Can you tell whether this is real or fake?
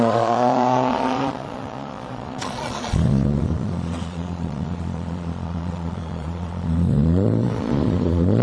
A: fake